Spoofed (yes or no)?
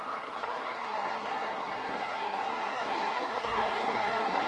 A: yes